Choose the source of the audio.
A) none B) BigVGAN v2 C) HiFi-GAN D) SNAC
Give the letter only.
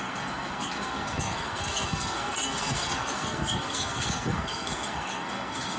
D